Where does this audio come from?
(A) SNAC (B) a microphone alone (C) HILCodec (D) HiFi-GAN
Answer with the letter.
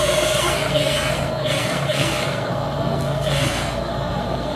A